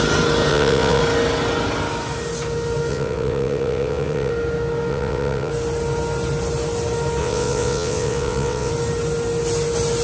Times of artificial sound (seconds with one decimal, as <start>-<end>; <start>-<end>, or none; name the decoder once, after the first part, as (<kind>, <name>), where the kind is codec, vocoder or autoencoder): 0.5-1.0 (vocoder, WaveNeXt); 2.9-4.3; 4.9-5.5; 7.2-8.7